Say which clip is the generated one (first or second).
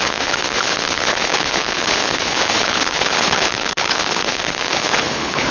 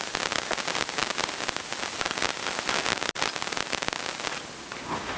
first